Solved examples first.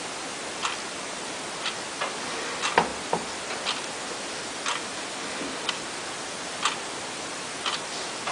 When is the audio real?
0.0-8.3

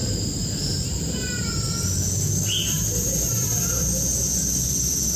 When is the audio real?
1.5-2.6; 4.8-5.2

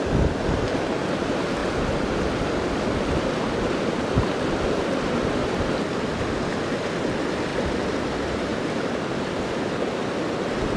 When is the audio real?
0.0-1.6; 6.0-7.5; 8.1-8.5; 9.1-10.8

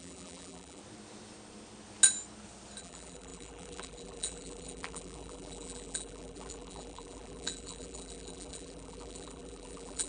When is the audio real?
0.8-2.8

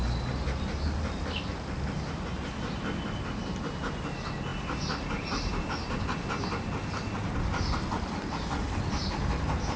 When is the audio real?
0.0-9.8